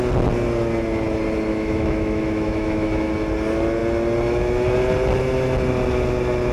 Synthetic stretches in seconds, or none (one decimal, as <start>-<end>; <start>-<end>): 1.5-3.1

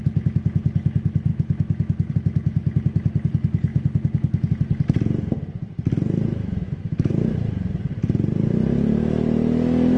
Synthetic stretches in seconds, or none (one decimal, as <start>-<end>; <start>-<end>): 1.3-2.1; 3.7-4.5; 6.3-7.1

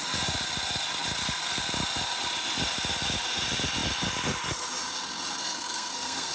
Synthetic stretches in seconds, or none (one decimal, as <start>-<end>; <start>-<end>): 5.4-6.3

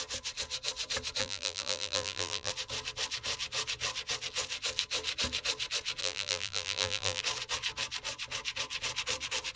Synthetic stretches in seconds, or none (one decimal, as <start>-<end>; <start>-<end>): 1.2-2.5; 6.0-7.2

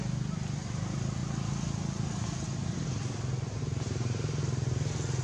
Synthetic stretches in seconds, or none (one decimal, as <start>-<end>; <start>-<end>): none

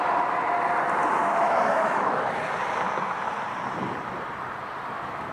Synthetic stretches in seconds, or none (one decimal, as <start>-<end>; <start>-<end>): 1.2-2.4

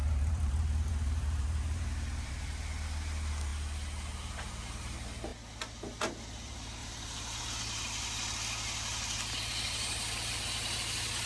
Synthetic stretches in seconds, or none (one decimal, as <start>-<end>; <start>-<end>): 0.0-2.3; 6.8-7.4

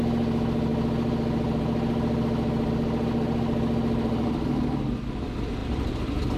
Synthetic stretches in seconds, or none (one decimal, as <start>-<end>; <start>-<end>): none